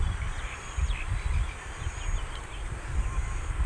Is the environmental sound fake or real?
fake